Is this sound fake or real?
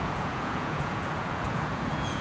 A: fake